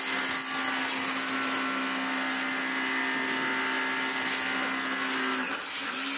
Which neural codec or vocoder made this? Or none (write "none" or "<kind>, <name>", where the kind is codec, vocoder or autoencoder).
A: none